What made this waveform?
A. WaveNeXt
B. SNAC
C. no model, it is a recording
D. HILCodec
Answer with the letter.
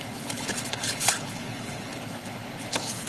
D